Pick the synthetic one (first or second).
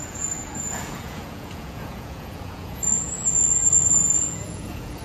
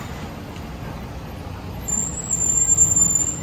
first